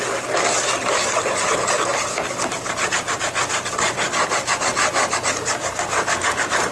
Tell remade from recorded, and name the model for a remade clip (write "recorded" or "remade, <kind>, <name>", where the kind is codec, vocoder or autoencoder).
recorded